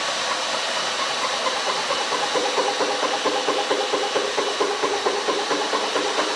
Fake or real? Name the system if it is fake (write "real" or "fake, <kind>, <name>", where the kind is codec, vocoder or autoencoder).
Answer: real